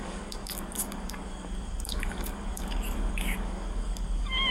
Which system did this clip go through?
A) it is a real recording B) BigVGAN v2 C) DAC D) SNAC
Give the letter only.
C